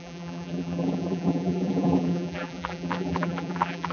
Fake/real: fake